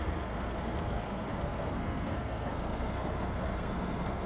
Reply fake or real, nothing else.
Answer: fake